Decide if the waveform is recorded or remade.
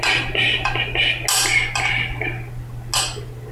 recorded